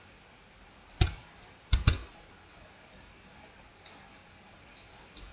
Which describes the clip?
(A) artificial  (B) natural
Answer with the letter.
B